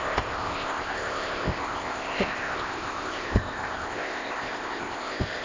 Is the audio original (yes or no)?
no